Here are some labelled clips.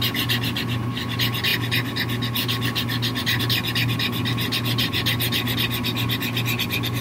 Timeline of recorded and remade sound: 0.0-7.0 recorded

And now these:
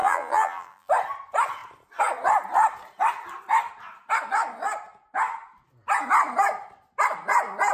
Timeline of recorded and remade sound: 0.0-0.9 remade; 0.9-7.7 recorded